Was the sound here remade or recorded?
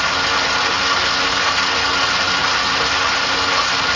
recorded